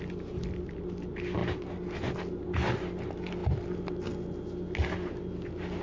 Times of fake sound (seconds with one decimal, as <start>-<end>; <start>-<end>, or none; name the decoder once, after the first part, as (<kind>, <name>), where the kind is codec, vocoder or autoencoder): none